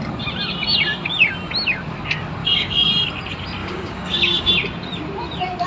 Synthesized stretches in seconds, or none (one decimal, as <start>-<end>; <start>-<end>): 2.4-2.9; 3.6-4.5